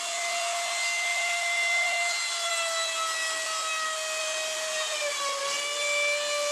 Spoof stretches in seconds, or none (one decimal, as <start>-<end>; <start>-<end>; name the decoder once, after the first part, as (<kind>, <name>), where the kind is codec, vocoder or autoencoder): 1.1-2.5 (vocoder, BigVGAN v2); 4.2-5.4